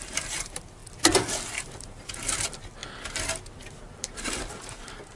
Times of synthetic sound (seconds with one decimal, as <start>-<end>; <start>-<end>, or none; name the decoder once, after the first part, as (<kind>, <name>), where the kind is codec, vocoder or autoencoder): 0.0-0.8 (vocoder, BigVGAN v2); 1.6-2.8; 3.5-5.2